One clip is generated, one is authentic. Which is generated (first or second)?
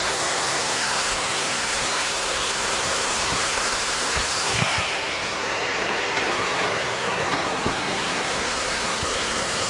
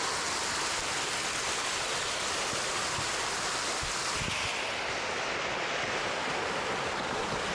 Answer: first